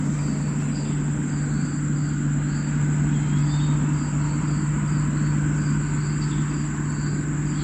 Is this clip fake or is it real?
real